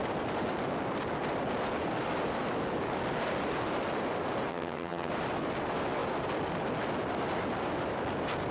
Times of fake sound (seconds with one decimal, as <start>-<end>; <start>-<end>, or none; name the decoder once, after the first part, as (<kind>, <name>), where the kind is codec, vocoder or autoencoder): 4.5-5.1 (vocoder, HiFi-GAN)